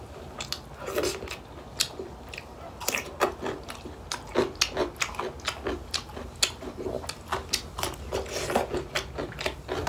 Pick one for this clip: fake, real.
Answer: real